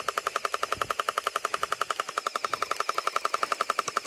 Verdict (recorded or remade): recorded